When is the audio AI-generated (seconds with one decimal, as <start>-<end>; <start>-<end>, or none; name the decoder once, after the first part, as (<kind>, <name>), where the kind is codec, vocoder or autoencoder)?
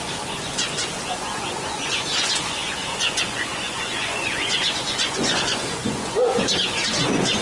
0.0-7.4 (vocoder, Vocos)